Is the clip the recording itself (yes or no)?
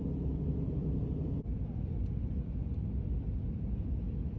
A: no